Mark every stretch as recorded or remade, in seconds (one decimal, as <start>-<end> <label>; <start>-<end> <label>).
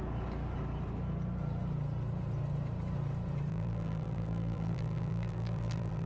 0.0-3.5 recorded; 3.5-6.1 remade